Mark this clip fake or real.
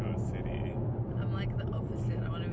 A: real